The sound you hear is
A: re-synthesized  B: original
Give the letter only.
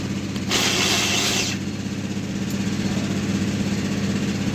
B